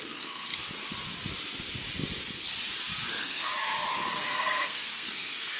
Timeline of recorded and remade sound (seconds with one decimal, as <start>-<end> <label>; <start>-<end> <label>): 0.0-0.5 remade; 0.5-3.1 recorded; 3.1-3.5 remade; 3.5-4.2 recorded; 4.2-5.6 remade